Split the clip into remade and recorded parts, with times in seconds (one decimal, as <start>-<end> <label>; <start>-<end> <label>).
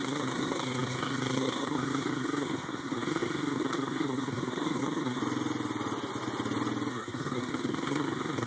0.0-5.2 remade; 5.2-6.9 recorded; 6.9-8.5 remade